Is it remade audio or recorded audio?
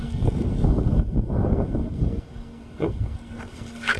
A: remade